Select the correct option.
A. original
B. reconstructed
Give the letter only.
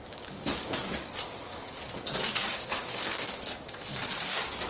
B